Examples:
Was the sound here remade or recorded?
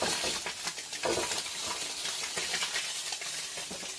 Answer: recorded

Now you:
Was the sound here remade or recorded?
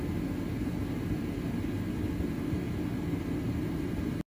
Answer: recorded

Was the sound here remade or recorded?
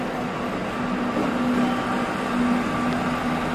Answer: recorded